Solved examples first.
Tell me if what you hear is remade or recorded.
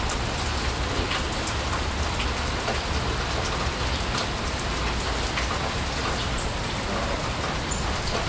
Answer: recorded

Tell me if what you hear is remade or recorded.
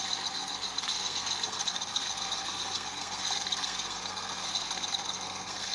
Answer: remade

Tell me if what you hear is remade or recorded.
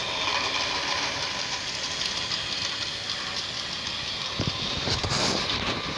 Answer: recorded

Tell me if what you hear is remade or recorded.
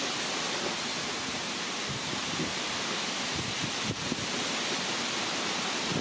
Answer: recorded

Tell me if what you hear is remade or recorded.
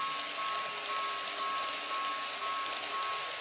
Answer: recorded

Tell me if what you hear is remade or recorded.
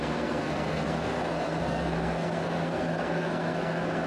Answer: remade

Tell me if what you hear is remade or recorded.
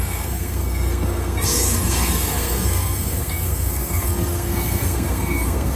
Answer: remade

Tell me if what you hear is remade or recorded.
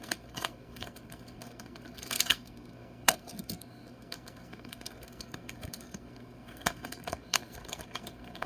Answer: remade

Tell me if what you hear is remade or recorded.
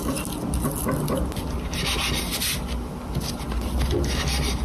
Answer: recorded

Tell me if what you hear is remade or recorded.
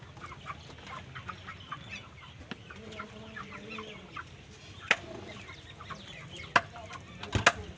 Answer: recorded